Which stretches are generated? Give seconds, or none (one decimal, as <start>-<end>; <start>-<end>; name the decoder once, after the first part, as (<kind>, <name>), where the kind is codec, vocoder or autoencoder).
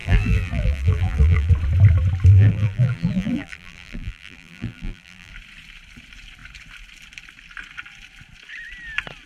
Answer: 0.0-1.5 (vocoder, BigVGAN v2); 2.3-5.3